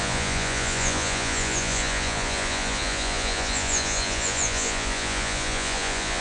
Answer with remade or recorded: remade